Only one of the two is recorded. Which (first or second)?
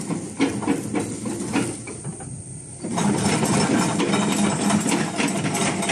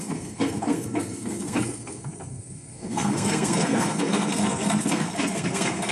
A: first